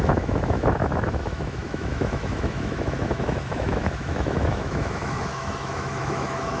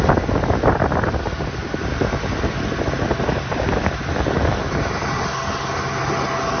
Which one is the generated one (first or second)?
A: first